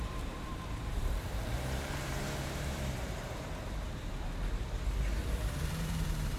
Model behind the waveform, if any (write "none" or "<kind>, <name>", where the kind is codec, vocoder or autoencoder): vocoder, BigVGAN v2